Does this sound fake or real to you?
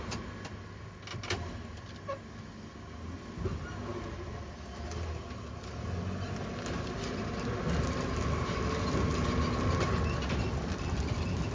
real